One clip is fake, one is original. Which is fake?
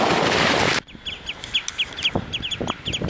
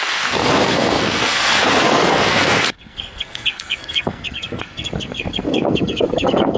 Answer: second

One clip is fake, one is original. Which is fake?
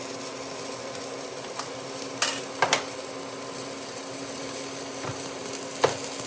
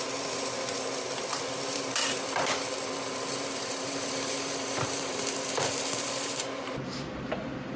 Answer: second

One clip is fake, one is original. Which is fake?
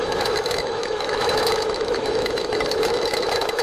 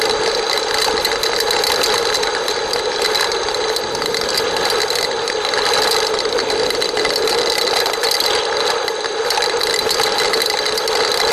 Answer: first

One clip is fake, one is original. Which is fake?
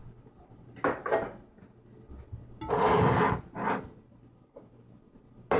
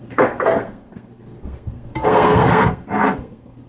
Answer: second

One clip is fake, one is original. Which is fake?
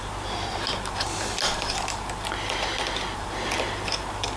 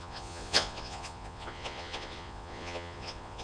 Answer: second